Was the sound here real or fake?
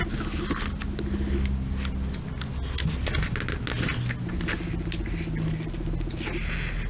real